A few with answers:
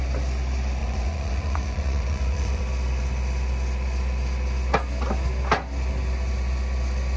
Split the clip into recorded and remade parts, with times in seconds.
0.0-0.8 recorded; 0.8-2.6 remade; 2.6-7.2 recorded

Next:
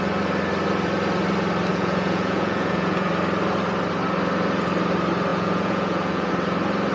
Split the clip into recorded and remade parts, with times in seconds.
0.0-1.7 recorded; 1.7-3.1 remade; 3.1-5.3 recorded; 5.3-6.3 remade; 6.3-6.9 recorded

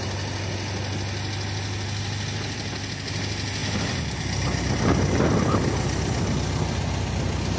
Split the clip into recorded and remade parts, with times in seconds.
0.0-7.6 recorded

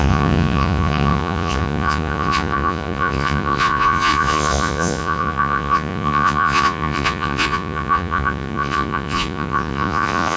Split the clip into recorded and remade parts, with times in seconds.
0.0-10.4 remade

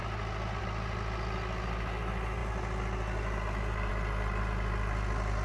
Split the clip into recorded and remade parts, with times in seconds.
0.0-5.4 recorded

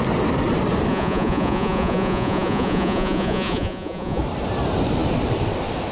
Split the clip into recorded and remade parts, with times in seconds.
0.0-0.9 recorded; 0.9-4.2 remade; 4.2-5.9 recorded

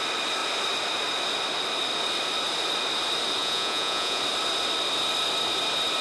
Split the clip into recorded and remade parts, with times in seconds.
0.0-3.4 recorded; 3.4-4.2 remade; 4.2-6.0 recorded